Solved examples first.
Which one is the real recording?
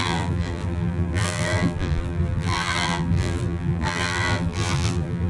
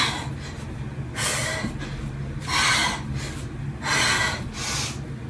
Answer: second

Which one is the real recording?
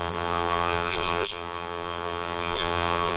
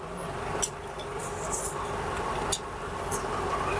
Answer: second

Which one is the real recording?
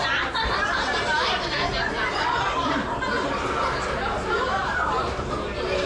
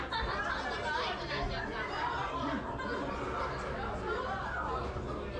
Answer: second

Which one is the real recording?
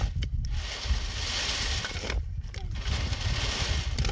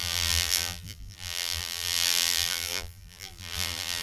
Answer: first